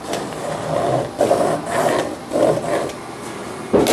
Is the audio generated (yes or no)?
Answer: no